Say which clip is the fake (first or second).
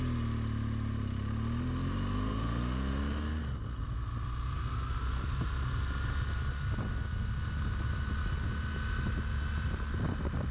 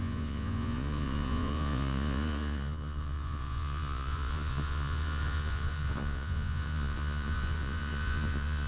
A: second